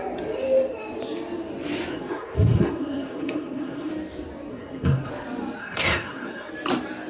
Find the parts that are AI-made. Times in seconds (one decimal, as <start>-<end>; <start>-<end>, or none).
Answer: 1.9-3.9; 4.5-5.1; 5.6-6.5